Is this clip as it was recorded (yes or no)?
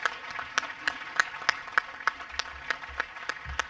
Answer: yes